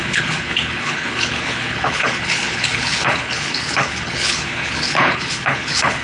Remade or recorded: remade